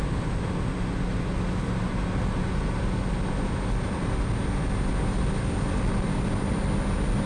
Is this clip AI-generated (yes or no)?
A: no